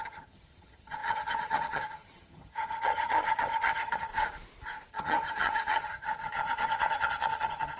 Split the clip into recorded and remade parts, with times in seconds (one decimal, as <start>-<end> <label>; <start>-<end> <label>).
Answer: 0.0-4.1 remade; 4.1-4.9 recorded; 4.9-7.8 remade